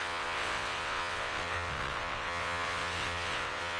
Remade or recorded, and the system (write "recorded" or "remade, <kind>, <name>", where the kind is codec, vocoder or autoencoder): remade, vocoder, WaveNeXt